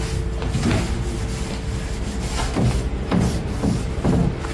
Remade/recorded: recorded